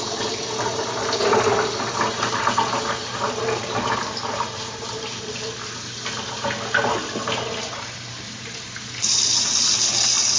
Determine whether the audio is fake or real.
real